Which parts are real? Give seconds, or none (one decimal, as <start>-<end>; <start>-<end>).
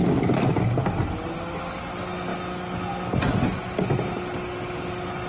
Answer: 0.0-5.3